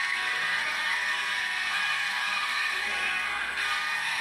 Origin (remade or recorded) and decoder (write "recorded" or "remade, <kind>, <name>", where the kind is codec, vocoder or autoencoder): remade, codec, SNAC